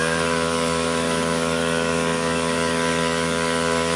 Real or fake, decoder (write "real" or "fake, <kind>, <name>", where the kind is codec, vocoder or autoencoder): fake, codec, DAC